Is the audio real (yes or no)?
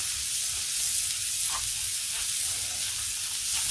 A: yes